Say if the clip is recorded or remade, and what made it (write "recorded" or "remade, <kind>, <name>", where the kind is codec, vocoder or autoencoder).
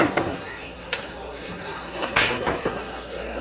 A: remade, codec, SNAC